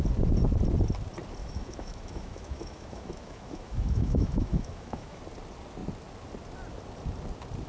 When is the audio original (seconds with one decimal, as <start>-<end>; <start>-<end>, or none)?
0.0-1.4; 5.2-7.7